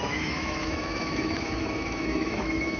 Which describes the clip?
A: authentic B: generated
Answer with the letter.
B